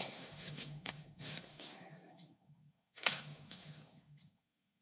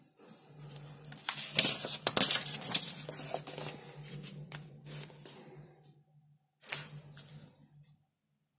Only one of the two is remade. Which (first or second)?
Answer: first